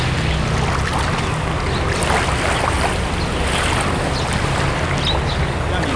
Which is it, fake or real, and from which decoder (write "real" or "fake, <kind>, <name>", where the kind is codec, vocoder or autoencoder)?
real